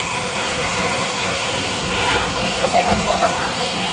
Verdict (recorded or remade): remade